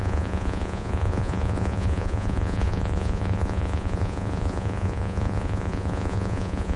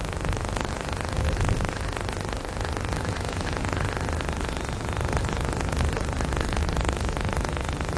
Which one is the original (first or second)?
second